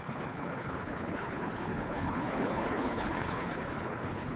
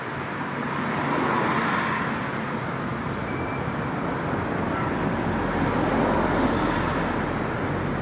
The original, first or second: second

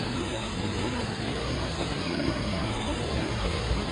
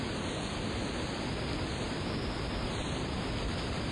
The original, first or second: second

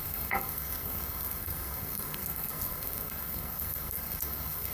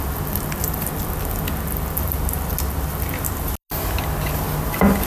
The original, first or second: second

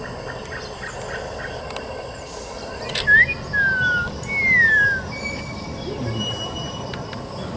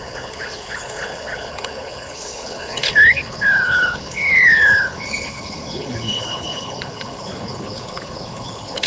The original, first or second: first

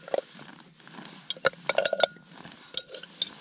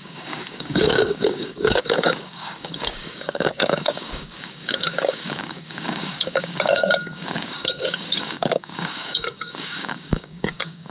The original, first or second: first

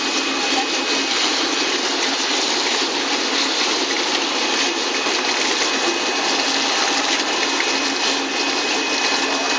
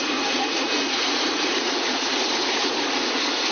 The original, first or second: first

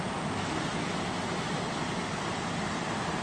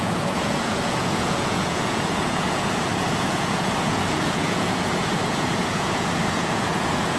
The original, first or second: first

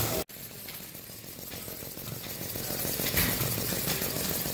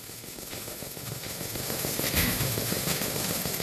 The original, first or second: first